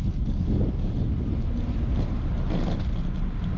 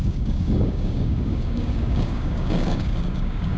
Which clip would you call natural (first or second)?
first